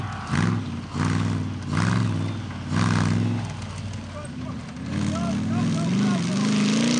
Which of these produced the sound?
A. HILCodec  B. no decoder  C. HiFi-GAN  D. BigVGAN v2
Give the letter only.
B